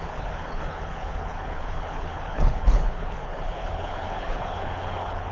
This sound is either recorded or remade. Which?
remade